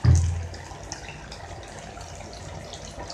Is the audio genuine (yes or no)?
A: yes